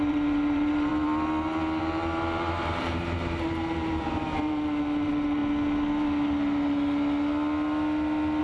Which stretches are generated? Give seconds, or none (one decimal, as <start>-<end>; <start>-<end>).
0.0-0.9; 1.8-5.4